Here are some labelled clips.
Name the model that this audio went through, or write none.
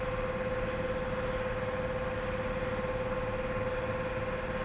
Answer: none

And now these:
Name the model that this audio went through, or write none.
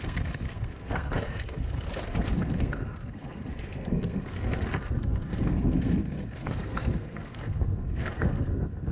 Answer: codec, SNAC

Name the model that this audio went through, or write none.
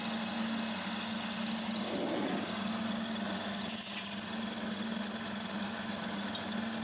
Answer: none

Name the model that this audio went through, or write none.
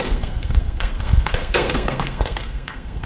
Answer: codec, SNAC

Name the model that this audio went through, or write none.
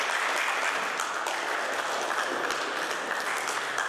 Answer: none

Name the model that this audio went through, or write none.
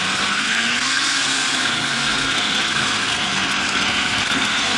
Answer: codec, SNAC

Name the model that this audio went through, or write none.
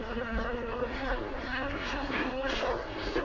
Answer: codec, SNAC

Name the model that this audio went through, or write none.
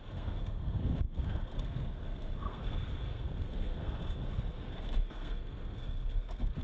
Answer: codec, SNAC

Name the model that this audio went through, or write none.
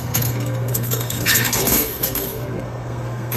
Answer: codec, SNAC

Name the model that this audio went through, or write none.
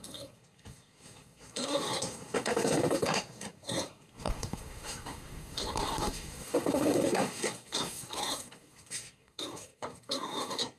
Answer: codec, SNAC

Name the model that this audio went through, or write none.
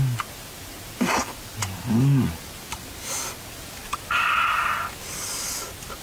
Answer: none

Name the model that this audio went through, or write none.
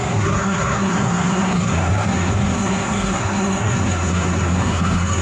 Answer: codec, SNAC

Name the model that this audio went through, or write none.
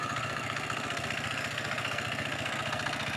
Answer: codec, SNAC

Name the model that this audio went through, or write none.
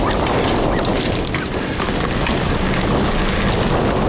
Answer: none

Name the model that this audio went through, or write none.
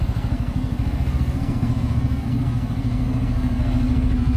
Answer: codec, SNAC